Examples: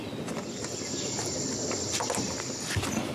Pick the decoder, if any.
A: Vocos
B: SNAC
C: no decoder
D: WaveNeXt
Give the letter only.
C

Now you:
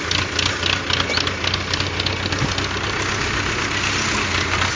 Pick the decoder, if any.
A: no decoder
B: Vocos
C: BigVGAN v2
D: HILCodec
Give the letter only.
A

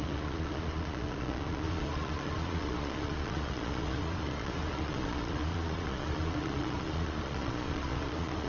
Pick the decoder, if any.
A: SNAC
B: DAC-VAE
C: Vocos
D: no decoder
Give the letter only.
C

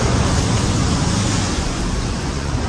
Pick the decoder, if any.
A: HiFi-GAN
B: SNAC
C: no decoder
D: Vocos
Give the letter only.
D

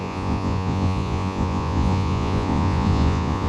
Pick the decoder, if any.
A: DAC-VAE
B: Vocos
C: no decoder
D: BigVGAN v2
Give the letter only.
B